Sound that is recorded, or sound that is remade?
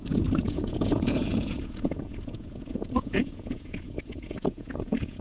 remade